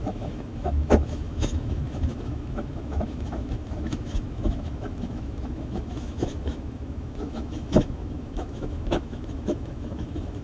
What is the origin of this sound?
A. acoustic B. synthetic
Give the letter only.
B